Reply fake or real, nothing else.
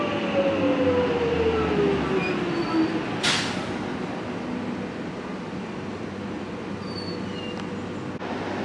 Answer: real